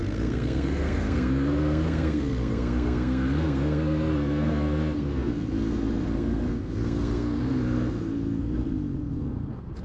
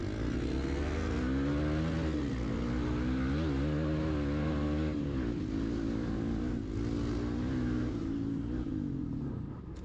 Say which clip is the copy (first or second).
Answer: first